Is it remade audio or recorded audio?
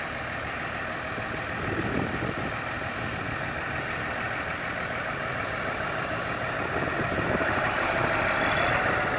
recorded